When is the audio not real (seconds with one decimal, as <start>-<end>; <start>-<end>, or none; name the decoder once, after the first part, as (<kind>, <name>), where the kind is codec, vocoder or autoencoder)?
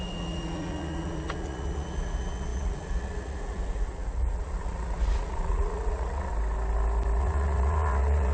0.0-6.3 (vocoder, Vocos); 7.2-8.3